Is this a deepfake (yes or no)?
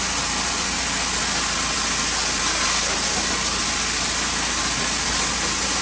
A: no